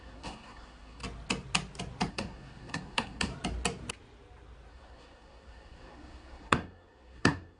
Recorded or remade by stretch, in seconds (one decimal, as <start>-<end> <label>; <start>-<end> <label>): 0.0-1.0 remade; 1.0-2.1 recorded; 2.1-3.3 remade; 3.3-4.7 recorded; 4.7-7.6 remade